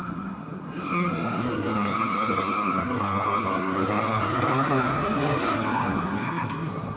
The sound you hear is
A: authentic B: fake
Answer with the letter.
B